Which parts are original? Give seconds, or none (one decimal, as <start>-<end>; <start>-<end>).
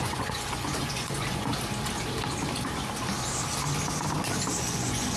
1.5-4.6